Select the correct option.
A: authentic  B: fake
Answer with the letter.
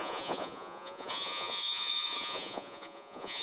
B